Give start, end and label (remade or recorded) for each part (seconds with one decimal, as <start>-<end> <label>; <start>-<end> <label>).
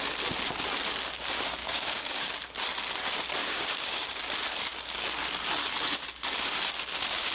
0.0-1.6 recorded; 1.6-2.3 remade; 2.3-3.4 recorded; 3.4-4.2 remade; 4.2-7.3 recorded